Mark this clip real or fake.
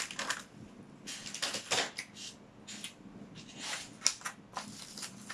real